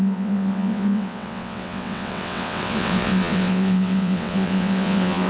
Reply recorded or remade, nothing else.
remade